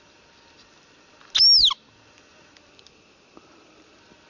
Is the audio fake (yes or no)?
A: no